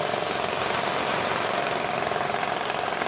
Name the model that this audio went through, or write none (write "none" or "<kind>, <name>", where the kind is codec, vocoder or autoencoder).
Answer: none